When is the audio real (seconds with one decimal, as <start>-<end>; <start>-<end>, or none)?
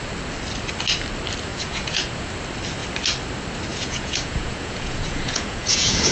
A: 0.0-1.5; 2.3-3.7